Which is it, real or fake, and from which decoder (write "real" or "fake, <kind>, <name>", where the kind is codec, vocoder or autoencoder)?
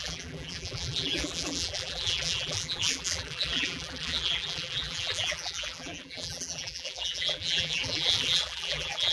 fake, vocoder, BigVGAN v2